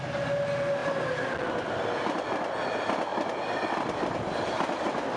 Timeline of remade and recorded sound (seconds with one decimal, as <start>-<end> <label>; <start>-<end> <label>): 0.0-5.2 recorded

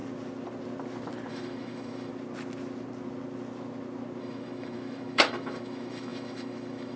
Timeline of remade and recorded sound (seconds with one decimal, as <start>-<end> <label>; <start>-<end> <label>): 0.0-1.3 recorded; 1.3-2.1 remade; 2.1-4.2 recorded; 4.2-7.0 remade

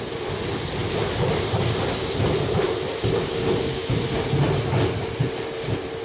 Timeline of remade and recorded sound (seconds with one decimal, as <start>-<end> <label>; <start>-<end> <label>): 0.0-6.0 recorded

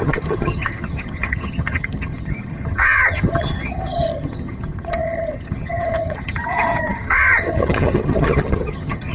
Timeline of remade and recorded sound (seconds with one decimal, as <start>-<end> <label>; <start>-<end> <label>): 0.0-9.1 remade

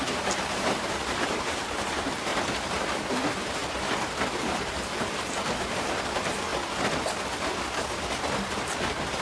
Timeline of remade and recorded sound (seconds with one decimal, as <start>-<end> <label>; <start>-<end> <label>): 0.0-2.3 remade; 2.3-2.8 recorded; 2.8-3.6 remade; 3.6-4.3 recorded; 4.3-6.5 remade; 6.5-9.2 recorded

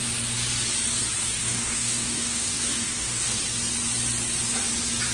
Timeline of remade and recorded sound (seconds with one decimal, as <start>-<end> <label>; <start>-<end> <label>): 0.0-1.2 recorded; 1.2-3.4 remade; 3.4-5.1 recorded